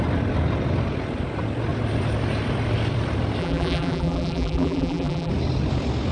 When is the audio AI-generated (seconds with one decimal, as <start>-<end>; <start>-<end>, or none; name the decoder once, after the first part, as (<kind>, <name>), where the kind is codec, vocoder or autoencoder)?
3.4-5.3 (vocoder, BigVGAN v2)